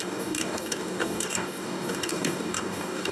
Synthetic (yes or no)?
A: yes